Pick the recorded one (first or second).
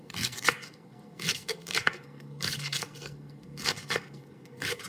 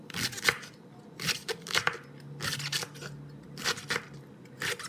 second